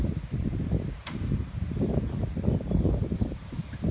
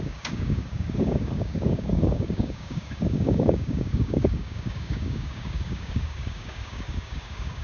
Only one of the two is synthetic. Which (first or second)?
second